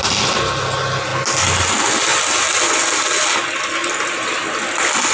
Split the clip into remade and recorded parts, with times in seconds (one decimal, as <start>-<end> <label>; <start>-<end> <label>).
0.0-5.1 recorded